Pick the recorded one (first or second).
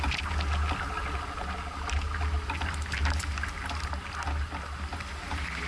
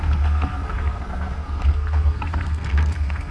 first